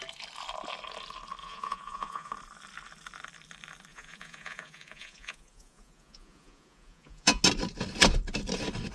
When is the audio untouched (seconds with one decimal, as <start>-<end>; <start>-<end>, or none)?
0.0-1.4; 2.3-3.9; 7.4-8.9

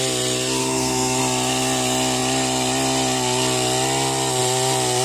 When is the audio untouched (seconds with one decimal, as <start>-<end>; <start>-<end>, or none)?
0.0-0.6; 1.2-5.0

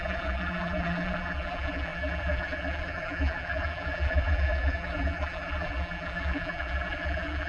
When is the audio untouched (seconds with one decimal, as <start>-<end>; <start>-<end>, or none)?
none

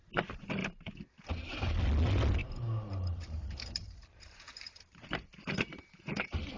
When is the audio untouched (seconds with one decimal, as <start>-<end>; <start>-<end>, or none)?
0.0-0.6; 1.2-2.4

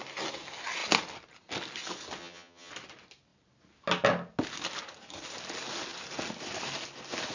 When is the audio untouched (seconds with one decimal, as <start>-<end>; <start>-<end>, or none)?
0.0-2.2; 2.7-7.3

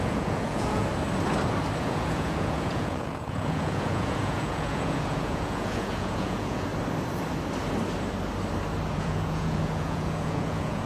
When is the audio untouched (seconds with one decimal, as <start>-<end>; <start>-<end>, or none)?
0.9-1.8; 6.7-8.9

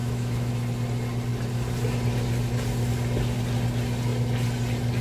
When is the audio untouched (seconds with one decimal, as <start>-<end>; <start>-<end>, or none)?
0.5-5.0

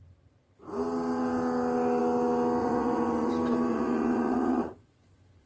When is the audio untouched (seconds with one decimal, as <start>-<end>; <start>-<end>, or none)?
0.0-2.6; 3.3-3.7